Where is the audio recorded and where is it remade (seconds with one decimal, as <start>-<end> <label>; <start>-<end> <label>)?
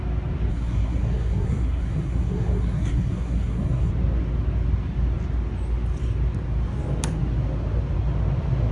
0.0-0.5 recorded; 0.5-3.9 remade; 3.9-8.7 recorded